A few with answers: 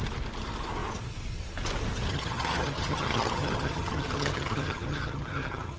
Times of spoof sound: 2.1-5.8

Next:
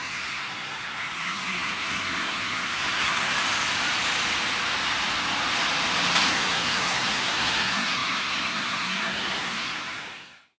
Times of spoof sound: 0.0-3.3; 6.3-10.6

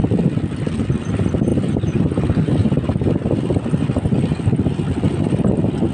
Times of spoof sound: none